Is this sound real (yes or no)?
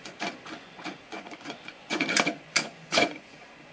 no